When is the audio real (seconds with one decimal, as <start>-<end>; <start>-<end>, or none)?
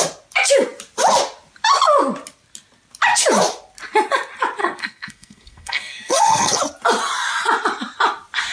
0.0-4.6; 6.6-8.5